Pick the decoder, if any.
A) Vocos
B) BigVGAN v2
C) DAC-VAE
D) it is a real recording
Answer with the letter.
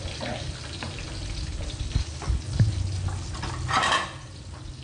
D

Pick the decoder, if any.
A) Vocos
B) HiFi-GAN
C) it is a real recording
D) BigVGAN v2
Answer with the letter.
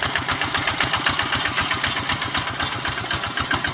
C